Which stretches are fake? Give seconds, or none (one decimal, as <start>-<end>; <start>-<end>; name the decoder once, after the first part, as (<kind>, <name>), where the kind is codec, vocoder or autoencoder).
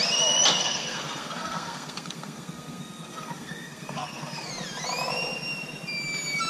0.6-4.5 (codec, SNAC)